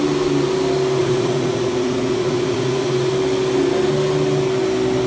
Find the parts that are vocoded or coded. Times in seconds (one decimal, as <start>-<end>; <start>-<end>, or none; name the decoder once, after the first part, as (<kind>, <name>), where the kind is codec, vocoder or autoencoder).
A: 1.0-3.1 (vocoder, Vocos)